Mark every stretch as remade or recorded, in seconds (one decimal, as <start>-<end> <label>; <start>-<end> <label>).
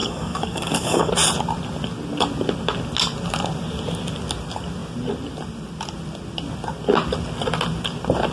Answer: 0.0-1.1 remade; 1.1-8.3 recorded